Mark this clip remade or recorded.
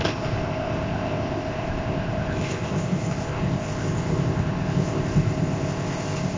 remade